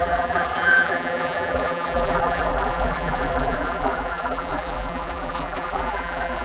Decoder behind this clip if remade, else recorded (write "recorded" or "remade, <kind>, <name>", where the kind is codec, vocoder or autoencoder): remade, vocoder, BigVGAN v2